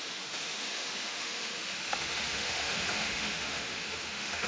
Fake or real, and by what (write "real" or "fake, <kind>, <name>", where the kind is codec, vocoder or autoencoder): fake, autoencoder, DAC-VAE